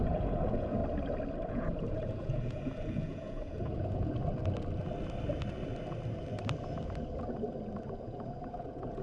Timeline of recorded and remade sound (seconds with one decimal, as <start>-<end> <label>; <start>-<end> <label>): 0.0-0.8 remade; 0.8-1.5 recorded; 1.5-4.2 remade; 4.2-8.0 recorded; 8.0-9.0 remade